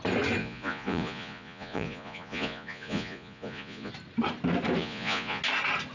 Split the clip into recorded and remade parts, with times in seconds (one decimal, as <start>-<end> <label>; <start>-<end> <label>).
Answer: 0.0-0.4 recorded; 0.4-3.9 remade; 3.9-4.8 recorded; 4.8-5.4 remade; 5.4-5.9 recorded